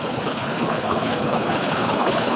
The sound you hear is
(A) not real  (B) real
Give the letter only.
A